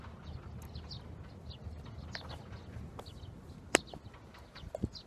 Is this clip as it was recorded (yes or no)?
yes